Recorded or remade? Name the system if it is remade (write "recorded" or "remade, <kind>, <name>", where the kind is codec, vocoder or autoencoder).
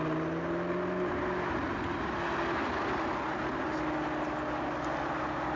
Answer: recorded